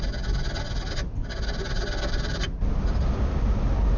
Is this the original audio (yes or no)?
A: yes